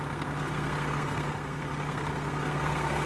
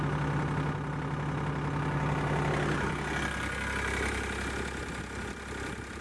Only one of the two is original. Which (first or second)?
second